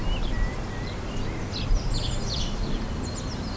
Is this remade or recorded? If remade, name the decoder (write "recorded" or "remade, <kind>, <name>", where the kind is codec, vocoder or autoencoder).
recorded